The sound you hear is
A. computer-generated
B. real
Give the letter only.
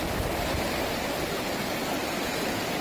B